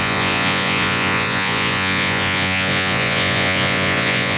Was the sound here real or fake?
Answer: fake